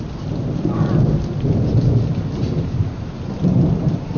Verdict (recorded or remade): recorded